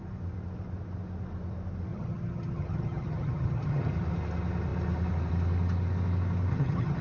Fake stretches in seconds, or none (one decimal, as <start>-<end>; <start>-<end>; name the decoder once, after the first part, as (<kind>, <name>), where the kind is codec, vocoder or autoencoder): 1.9-3.9 (vocoder, HiFi-GAN); 6.5-7.0